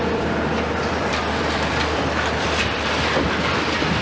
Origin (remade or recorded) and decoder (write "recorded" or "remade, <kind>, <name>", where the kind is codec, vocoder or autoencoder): remade, vocoder, BigVGAN v2